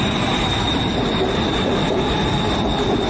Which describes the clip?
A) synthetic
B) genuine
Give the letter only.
A